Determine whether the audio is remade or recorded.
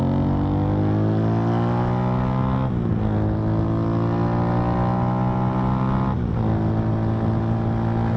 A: recorded